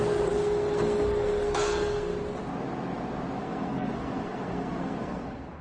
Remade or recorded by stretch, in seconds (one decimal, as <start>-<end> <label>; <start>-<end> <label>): 0.0-2.1 remade; 2.1-3.4 recorded; 3.4-5.6 remade